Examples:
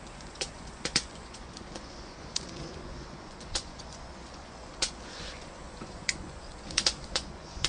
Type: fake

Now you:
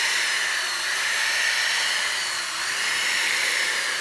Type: real